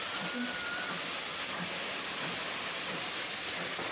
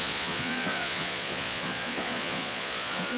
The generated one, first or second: second